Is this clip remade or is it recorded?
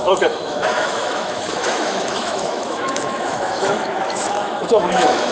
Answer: remade